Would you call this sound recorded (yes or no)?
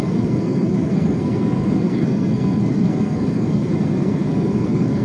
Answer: no